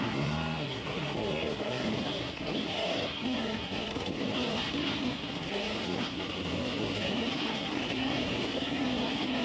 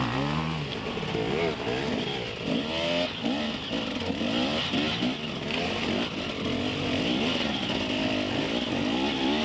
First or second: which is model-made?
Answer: first